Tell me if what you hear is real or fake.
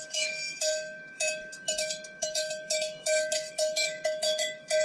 fake